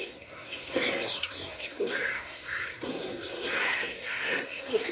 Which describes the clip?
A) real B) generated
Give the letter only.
B